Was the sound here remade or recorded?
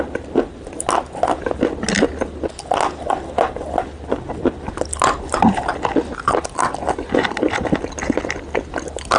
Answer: recorded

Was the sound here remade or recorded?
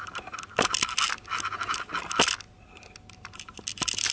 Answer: recorded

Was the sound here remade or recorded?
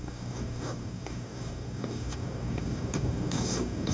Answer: remade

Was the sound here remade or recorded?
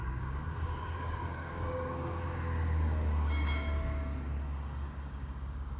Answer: remade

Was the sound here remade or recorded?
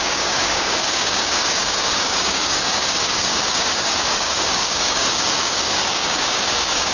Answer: remade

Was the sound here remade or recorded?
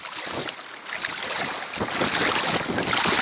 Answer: recorded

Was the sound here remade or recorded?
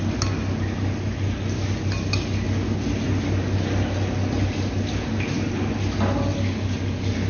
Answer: recorded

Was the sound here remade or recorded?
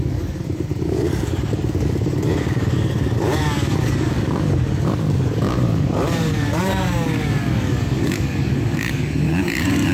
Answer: remade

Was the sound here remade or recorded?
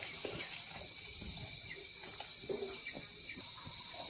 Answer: recorded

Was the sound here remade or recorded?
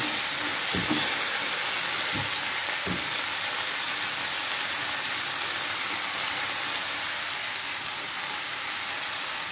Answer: recorded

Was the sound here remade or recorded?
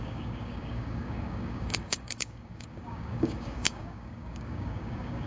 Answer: remade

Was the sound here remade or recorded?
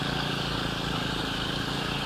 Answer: remade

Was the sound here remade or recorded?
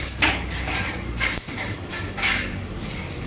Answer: remade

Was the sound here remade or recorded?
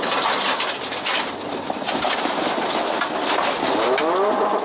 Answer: recorded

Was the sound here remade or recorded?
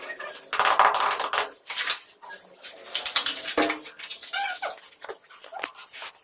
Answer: recorded